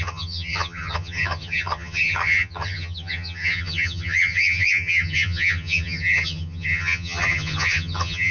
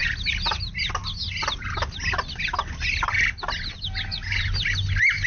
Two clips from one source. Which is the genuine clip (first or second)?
second